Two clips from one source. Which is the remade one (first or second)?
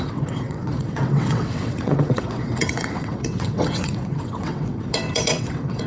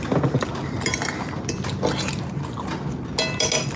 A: first